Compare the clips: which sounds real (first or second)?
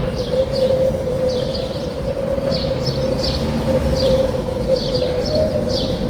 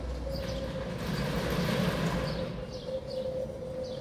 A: second